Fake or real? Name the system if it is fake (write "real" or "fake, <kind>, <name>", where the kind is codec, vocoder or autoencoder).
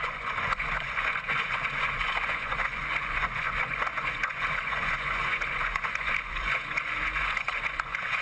fake, vocoder, Vocos